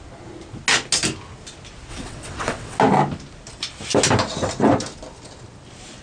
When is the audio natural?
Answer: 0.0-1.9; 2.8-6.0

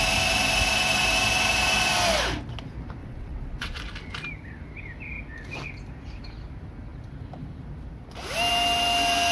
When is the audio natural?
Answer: 0.0-3.0; 3.8-9.3

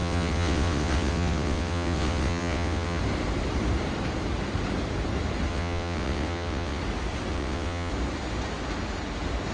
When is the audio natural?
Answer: 3.0-5.5; 6.8-7.3; 7.9-9.5

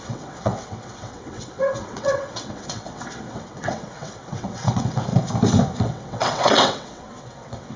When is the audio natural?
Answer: 5.1-5.8

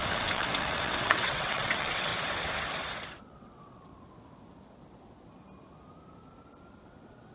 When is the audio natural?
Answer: 2.1-3.1; 3.9-6.8

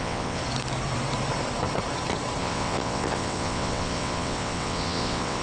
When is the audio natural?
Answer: 0.4-2.4

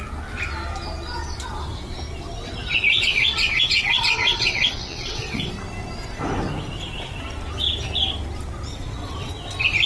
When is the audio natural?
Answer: 0.0-2.9; 5.5-8.7; 9.3-9.9

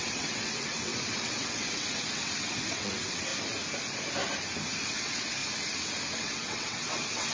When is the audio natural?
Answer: 3.3-4.9; 5.4-6.2